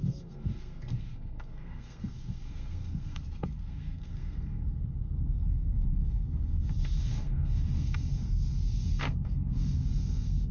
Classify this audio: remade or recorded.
remade